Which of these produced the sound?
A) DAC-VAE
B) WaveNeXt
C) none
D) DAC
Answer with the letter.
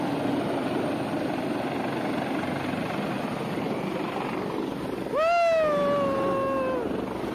C